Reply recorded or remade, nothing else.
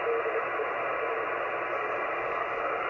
recorded